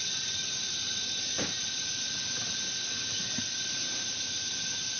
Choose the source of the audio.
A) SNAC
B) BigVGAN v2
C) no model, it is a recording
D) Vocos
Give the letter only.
C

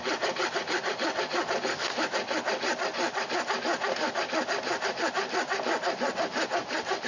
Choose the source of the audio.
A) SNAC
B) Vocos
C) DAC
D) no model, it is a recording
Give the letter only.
D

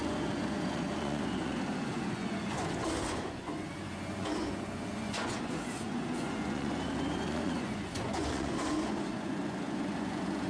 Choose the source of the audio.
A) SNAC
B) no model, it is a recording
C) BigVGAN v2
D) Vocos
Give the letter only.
D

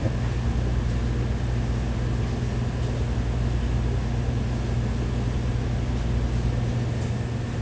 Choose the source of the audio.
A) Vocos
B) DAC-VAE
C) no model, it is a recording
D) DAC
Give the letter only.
C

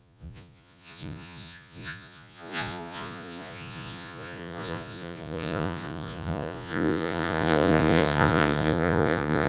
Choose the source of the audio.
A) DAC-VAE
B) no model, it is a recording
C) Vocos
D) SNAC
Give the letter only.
C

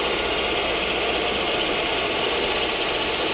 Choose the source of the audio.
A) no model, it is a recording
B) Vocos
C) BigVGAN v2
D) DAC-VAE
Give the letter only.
A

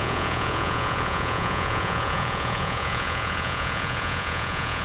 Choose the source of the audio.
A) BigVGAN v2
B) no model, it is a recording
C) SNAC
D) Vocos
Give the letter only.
D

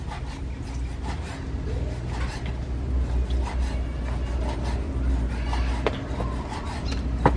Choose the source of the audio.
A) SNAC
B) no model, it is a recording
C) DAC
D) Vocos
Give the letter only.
B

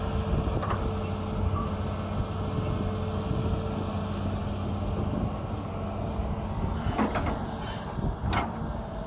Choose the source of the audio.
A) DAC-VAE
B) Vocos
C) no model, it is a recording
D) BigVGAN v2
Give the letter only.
C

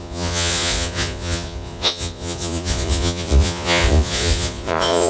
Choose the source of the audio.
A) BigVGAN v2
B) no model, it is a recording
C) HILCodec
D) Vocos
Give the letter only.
D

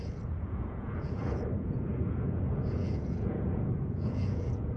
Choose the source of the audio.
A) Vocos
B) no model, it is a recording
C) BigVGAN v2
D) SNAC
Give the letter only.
A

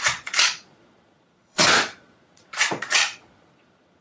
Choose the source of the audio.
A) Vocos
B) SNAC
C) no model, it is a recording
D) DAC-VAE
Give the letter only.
A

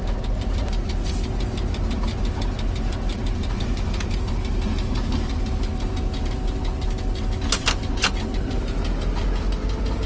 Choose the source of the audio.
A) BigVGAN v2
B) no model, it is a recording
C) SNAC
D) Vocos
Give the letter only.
B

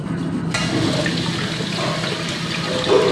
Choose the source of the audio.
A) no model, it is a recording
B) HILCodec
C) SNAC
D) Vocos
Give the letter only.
A